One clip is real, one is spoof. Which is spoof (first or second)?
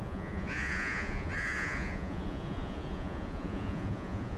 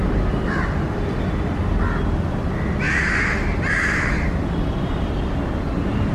first